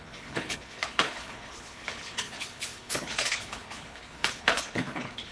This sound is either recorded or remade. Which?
remade